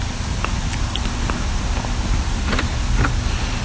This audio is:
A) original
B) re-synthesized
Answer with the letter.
A